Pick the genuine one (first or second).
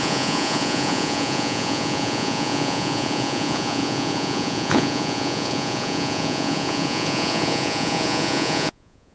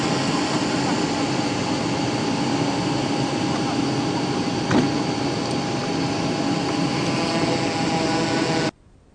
second